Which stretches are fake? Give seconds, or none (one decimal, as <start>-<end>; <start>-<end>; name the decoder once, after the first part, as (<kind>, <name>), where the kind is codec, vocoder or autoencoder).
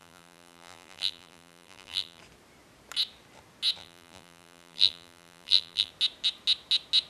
0.0-2.2 (vocoder, BigVGAN v2); 3.8-5.9